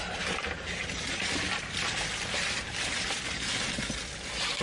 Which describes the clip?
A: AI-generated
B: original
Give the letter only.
B